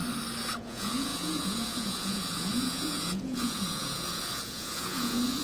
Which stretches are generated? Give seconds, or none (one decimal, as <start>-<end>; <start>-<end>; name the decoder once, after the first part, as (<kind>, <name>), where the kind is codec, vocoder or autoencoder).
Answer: 0.6-5.4 (vocoder, Vocos)